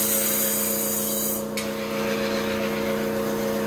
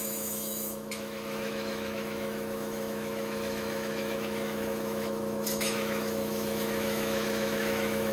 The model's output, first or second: second